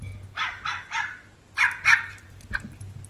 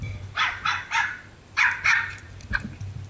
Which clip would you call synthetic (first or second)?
second